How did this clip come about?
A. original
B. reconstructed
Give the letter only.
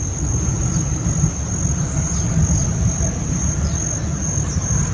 A